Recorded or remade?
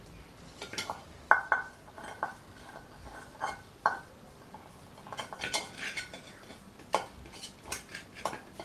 recorded